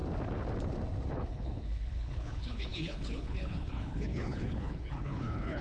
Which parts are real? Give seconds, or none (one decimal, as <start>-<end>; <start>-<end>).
0.0-1.1